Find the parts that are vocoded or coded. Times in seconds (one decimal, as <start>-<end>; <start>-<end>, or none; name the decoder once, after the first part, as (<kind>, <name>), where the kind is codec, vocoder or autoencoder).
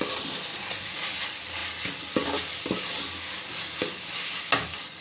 0.5-1.1 (vocoder, Vocos)